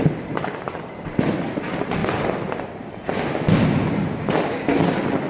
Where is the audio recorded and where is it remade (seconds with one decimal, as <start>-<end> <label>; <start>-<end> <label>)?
0.0-2.0 remade; 2.0-5.3 recorded